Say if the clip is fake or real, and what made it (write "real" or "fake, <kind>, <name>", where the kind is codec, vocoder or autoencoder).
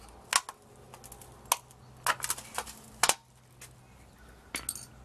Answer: real